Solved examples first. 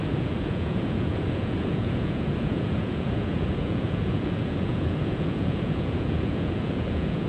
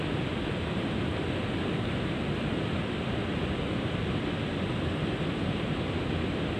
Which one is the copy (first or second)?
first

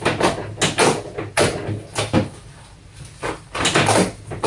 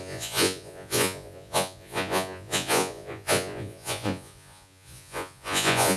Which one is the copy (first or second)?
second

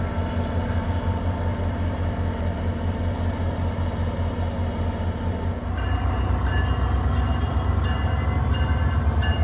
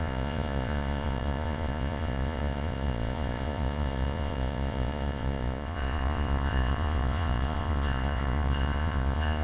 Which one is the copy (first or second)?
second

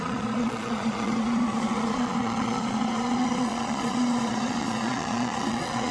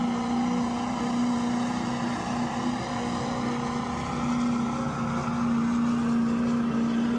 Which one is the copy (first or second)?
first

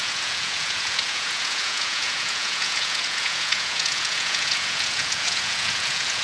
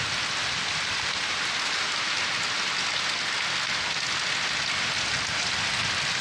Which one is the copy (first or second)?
first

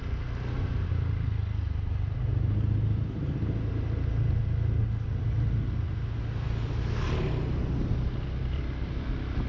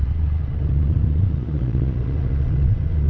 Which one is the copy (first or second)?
second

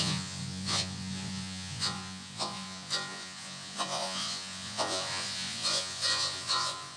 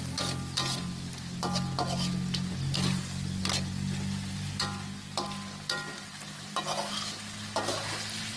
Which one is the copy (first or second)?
first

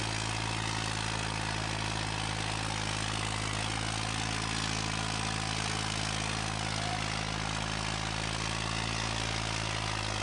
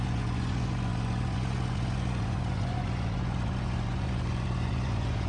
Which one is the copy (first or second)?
second